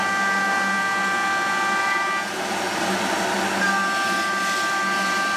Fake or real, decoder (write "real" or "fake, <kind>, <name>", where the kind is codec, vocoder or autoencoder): real